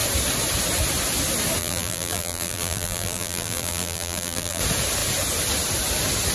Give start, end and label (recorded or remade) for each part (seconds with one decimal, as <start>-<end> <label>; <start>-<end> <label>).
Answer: 0.0-1.6 recorded; 1.6-4.6 remade; 4.6-6.3 recorded